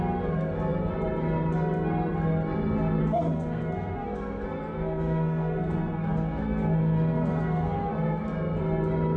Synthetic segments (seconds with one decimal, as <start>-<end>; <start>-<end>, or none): 3.0-8.2